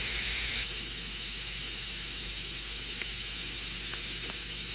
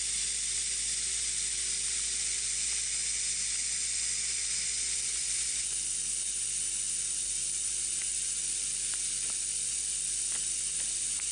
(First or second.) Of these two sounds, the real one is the second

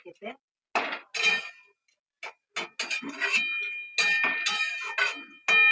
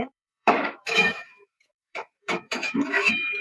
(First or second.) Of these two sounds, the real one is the first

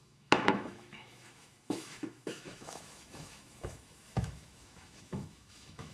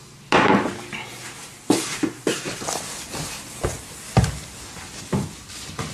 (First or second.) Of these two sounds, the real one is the second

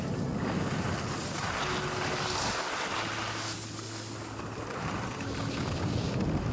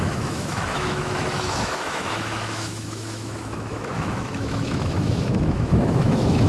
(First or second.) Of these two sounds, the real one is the first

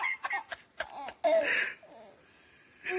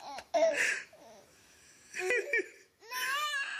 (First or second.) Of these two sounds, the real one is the first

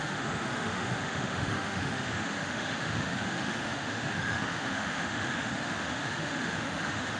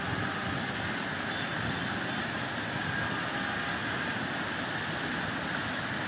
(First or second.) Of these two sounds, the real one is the second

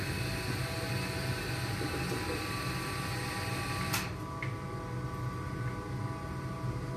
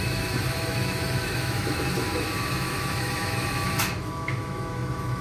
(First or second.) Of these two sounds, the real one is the first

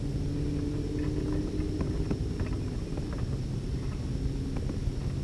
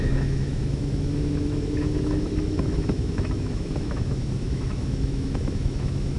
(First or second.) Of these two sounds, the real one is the first